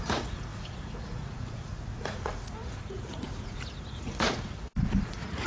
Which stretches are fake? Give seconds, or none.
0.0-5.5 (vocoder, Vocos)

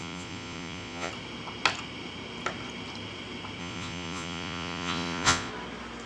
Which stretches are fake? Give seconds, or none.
0.0-1.1 (vocoder, Vocos); 3.6-5.5

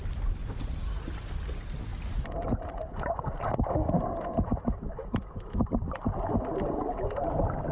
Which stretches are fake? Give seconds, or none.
none

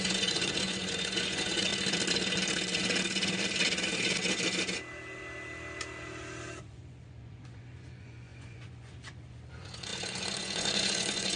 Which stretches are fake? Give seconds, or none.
0.0-1.7 (vocoder, Vocos); 6.6-11.4

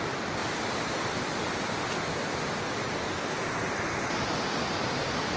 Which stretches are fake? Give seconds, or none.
none

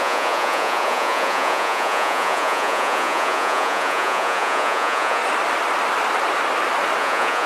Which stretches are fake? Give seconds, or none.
0.0-5.2 (vocoder, Vocos); 7.0-7.5

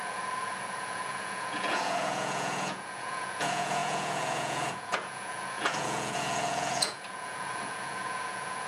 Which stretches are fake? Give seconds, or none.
0.0-8.7 (vocoder, Vocos)